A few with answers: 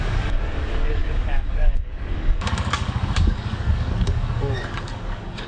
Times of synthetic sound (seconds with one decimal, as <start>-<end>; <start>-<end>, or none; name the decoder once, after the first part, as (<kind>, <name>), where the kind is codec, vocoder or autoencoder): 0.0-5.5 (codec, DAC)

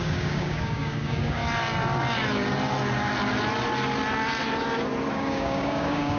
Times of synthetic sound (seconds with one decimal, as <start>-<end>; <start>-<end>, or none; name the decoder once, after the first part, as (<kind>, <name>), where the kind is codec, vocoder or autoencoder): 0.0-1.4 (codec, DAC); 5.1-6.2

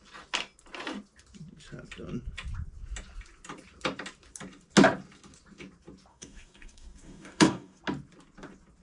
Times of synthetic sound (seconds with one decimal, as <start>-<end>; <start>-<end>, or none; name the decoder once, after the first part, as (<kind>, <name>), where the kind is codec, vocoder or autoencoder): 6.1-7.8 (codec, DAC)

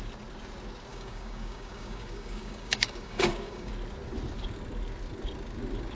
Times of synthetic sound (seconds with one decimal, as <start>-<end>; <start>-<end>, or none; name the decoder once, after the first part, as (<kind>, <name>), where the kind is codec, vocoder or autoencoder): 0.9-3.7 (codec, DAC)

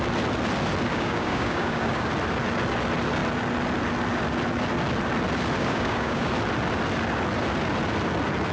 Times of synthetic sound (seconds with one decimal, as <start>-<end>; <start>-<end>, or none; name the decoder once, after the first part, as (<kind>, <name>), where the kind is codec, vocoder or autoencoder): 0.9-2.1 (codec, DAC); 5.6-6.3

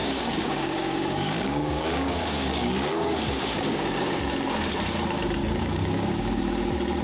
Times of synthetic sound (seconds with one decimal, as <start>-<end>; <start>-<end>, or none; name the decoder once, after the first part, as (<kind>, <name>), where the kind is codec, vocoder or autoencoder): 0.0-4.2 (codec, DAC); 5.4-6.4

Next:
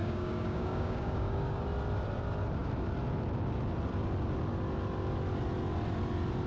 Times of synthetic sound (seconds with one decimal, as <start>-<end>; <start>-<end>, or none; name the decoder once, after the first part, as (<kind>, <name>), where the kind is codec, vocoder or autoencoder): 0.0-1.6 (codec, DAC)